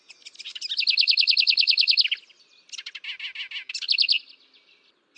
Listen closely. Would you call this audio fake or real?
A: real